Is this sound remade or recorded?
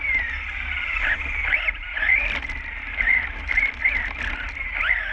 recorded